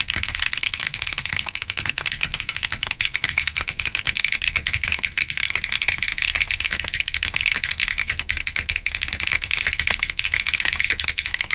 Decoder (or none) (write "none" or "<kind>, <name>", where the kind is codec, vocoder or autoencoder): codec, SNAC